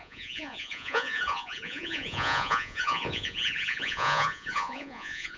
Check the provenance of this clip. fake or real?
fake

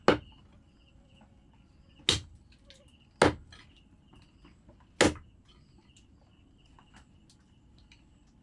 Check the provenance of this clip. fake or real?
real